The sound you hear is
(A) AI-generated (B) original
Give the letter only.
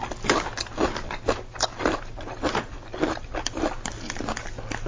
B